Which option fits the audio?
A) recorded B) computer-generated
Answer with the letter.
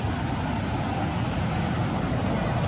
A